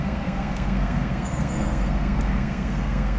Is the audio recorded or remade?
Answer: remade